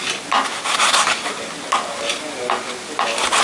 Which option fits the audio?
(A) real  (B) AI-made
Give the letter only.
A